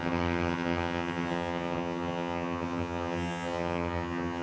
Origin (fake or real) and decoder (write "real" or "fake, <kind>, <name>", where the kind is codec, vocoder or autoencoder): fake, vocoder, HiFi-GAN